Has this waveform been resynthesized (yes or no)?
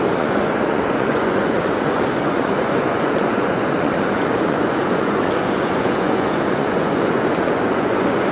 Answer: yes